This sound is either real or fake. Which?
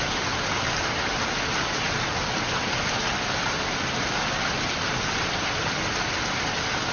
real